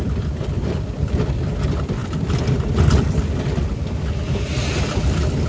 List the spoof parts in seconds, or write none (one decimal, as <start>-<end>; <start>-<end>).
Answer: none